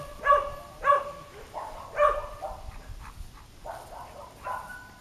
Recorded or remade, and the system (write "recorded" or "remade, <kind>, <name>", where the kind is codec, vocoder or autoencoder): recorded